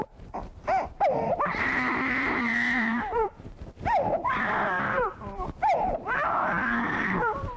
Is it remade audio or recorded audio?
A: remade